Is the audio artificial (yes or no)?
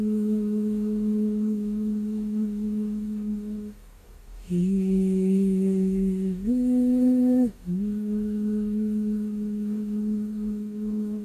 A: yes